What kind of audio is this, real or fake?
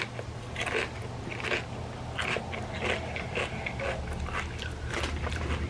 real